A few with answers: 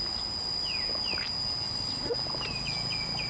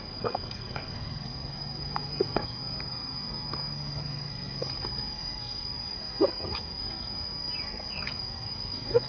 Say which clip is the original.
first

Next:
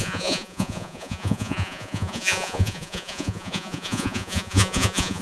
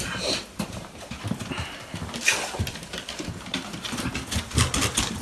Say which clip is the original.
second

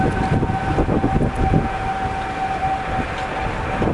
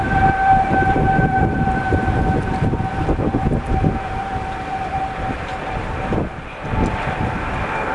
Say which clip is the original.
first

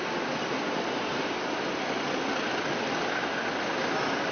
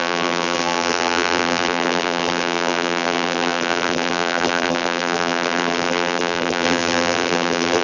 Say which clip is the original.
first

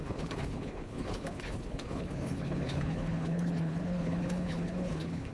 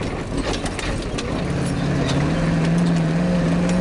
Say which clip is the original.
second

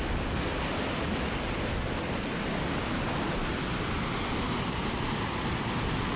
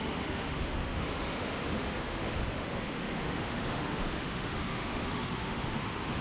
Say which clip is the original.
first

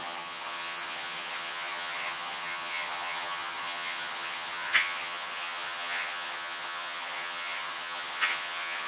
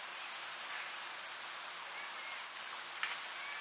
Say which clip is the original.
second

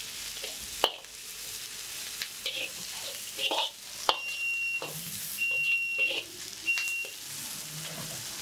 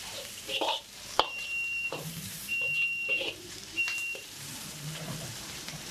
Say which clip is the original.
first